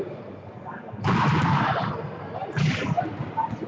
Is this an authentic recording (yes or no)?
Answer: yes